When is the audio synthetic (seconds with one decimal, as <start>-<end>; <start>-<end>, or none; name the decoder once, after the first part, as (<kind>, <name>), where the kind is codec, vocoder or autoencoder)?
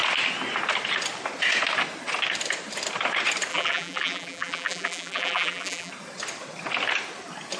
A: 3.5-5.9 (vocoder, BigVGAN v2)